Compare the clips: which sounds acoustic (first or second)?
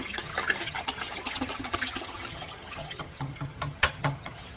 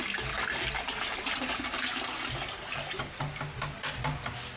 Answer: second